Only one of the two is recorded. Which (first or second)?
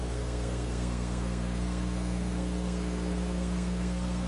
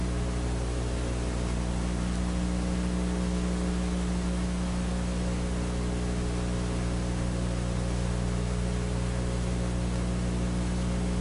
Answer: second